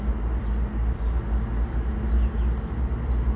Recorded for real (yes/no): yes